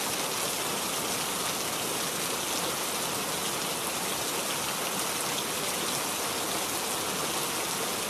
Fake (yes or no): no